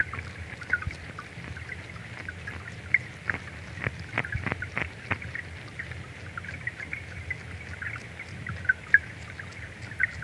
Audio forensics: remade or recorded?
recorded